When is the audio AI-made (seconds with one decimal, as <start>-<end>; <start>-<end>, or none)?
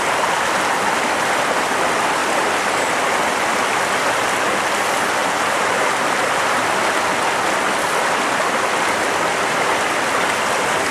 5.2-6.8